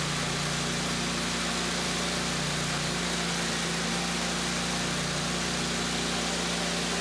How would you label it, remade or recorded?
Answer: recorded